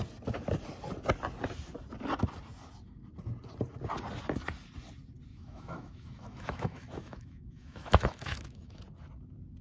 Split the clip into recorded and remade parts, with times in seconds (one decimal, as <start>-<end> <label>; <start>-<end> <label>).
0.0-5.3 recorded; 5.3-8.8 remade; 8.8-9.6 recorded